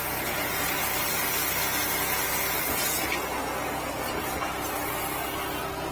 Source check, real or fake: real